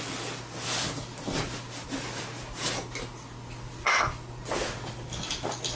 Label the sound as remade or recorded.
recorded